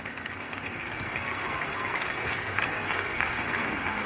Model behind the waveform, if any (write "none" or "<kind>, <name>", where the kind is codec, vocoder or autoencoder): codec, SNAC